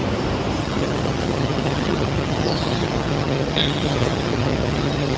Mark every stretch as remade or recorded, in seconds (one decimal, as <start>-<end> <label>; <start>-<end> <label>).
0.0-0.6 recorded; 0.6-5.2 remade